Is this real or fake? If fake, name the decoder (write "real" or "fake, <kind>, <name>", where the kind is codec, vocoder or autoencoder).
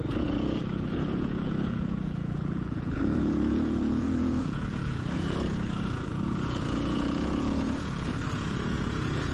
fake, vocoder, Vocos